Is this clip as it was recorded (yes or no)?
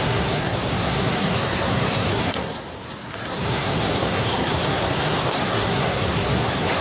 no